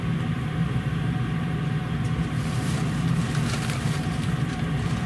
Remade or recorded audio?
remade